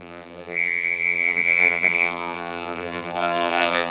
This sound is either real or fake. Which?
fake